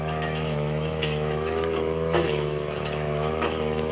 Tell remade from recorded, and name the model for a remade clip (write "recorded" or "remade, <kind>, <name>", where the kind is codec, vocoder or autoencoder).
remade, autoencoder, DAC-VAE